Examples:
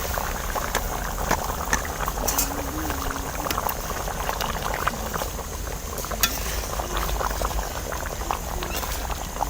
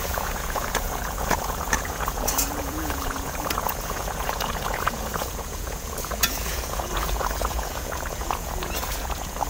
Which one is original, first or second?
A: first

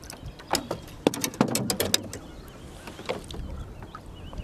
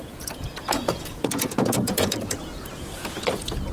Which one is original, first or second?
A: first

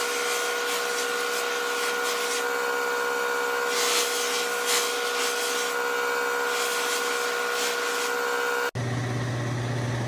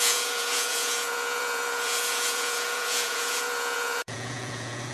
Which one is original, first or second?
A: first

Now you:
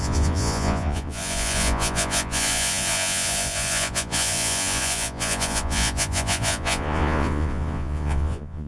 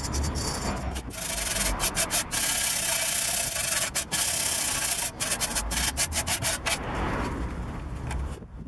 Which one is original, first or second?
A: second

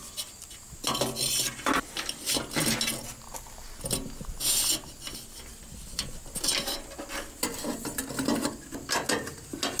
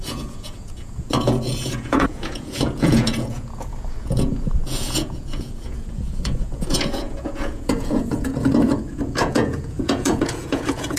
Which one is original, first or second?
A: first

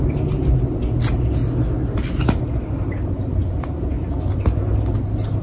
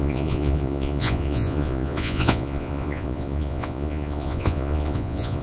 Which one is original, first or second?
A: first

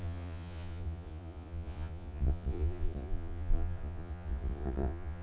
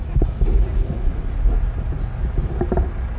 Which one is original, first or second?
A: second